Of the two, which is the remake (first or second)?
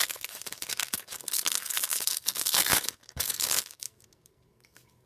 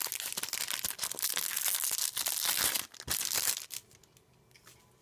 first